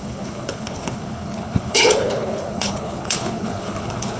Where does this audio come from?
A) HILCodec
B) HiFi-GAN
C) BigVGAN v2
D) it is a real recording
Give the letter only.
A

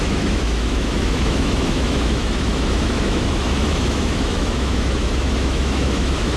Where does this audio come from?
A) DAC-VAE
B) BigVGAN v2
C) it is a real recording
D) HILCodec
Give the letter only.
A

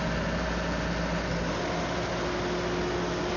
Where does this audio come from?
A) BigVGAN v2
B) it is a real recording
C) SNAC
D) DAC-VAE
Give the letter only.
B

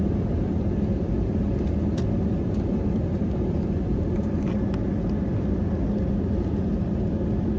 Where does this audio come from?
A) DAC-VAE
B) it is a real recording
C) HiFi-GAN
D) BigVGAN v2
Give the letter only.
D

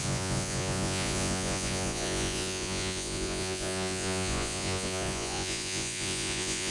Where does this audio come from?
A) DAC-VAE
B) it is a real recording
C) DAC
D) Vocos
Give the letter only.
D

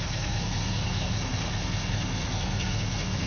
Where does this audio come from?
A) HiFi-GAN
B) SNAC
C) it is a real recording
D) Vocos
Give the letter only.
B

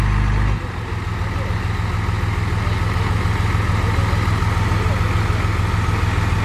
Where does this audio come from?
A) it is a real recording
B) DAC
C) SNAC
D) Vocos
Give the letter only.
A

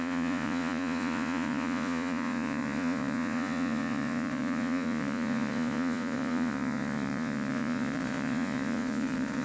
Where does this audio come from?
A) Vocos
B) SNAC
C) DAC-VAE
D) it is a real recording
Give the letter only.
A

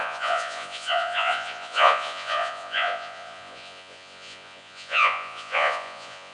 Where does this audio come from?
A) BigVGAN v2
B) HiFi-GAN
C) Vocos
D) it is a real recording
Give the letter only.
C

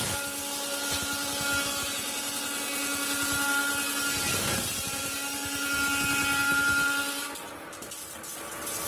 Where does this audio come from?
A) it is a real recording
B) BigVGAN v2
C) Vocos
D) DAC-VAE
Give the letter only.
A